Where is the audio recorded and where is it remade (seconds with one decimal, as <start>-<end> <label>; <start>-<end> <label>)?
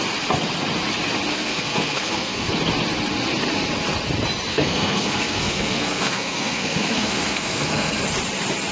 0.0-1.3 recorded; 1.3-2.5 remade; 2.5-4.5 recorded; 4.5-8.0 remade; 8.0-8.7 recorded